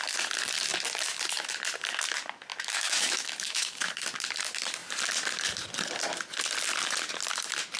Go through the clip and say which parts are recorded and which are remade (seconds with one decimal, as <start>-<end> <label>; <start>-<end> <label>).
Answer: 0.0-2.5 recorded; 2.5-3.9 remade; 3.9-7.8 recorded